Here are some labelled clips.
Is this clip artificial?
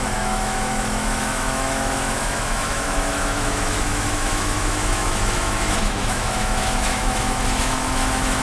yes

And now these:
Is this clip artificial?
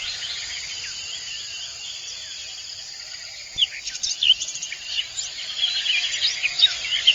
yes